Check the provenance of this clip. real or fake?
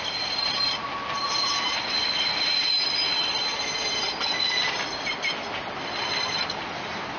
real